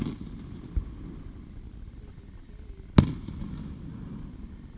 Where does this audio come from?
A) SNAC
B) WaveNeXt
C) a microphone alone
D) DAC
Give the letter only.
C